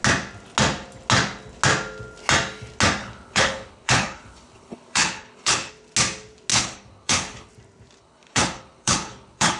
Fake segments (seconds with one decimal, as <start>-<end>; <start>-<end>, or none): 3.0-5.7; 6.5-7.5; 8.0-9.6